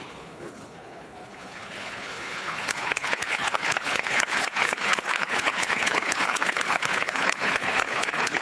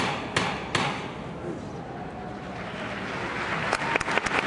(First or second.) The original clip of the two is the second